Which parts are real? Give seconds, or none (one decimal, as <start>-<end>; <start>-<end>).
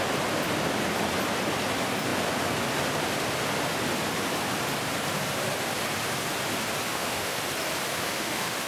0.0-6.9; 7.4-7.9